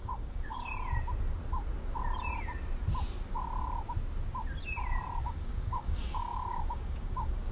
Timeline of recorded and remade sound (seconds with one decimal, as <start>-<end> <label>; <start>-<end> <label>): 0.0-0.7 remade; 0.7-5.2 recorded; 5.2-7.5 remade